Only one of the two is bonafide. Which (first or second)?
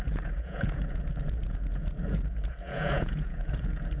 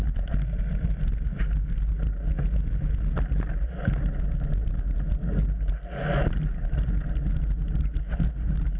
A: second